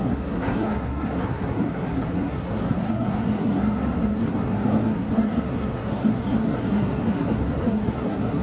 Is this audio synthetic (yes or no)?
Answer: yes